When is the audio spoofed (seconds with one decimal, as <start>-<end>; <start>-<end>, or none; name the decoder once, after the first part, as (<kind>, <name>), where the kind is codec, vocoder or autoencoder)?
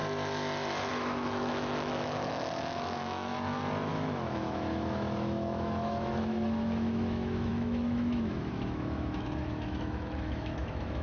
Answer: 0.9-3.3 (autoencoder, DAC-VAE); 3.9-11.0